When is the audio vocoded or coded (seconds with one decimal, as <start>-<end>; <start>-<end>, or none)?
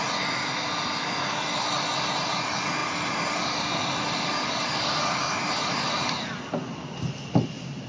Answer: none